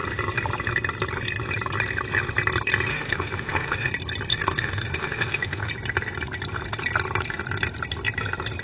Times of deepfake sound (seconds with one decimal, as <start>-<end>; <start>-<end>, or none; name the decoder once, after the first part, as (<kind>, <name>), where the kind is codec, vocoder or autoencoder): 2.9-3.9 (autoencoder, DAC-VAE); 4.3-5.7